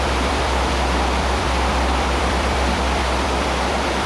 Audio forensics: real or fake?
fake